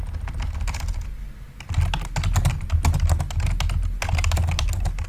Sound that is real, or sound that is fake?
real